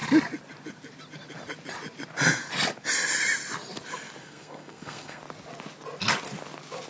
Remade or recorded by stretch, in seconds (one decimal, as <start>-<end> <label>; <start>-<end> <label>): 0.0-4.2 recorded; 4.2-5.2 remade; 5.2-6.9 recorded